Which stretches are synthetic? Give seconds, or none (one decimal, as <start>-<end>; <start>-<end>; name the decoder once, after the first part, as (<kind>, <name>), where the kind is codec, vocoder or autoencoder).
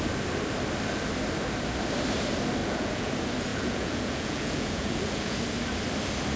2.6-3.1 (vocoder, Vocos); 3.5-5.4